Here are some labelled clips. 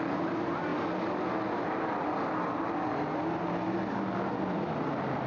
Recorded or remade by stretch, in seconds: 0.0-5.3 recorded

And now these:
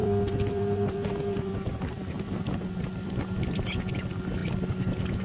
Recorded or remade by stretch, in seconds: 0.0-3.1 remade; 3.1-5.2 recorded

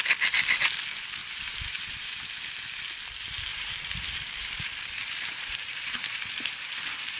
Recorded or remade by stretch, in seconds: 0.0-1.2 recorded; 1.2-2.2 remade; 2.2-3.5 recorded; 3.5-7.2 remade

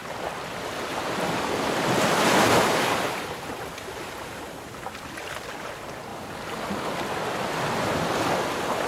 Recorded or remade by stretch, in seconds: 0.0-3.8 remade; 3.8-8.9 recorded

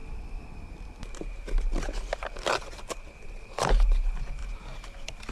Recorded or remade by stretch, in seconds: 0.0-3.2 recorded; 3.2-4.4 remade; 4.4-5.3 recorded

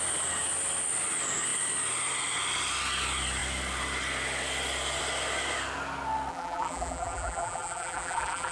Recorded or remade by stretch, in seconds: 0.0-6.3 recorded; 6.3-8.5 remade

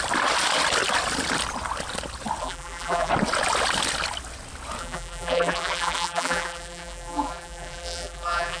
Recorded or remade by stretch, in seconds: 0.0-2.4 recorded; 2.4-3.1 remade; 3.1-4.8 recorded; 4.8-8.6 remade

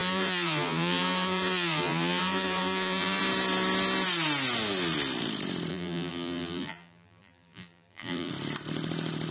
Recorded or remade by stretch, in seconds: 0.0-3.2 remade; 3.2-5.7 recorded; 5.7-8.3 remade; 8.3-9.3 recorded